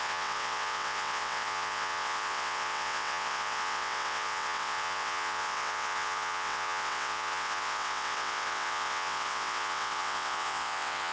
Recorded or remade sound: remade